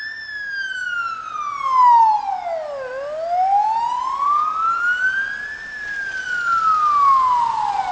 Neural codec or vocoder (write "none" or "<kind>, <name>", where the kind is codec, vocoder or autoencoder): none